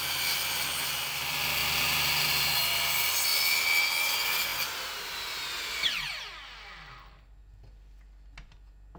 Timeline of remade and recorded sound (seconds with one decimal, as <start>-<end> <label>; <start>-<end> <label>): 0.0-1.6 recorded; 1.6-2.6 remade; 2.6-9.0 recorded